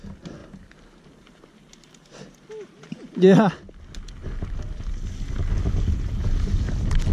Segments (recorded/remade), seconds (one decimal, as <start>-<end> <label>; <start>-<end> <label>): 0.0-0.4 recorded; 0.4-3.5 remade; 3.5-7.1 recorded